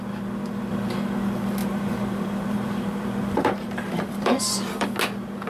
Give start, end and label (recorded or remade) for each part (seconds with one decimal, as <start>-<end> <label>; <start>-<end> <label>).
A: 0.0-1.6 recorded; 1.6-4.9 remade; 4.9-5.5 recorded